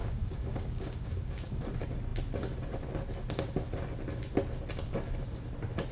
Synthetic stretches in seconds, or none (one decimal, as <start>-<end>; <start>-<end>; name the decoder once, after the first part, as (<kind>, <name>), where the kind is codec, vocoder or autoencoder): 0.0-1.6 (codec, DAC)